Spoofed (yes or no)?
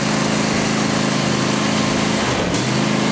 no